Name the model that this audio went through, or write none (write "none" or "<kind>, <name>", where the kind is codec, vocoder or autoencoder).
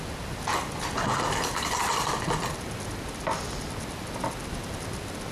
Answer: none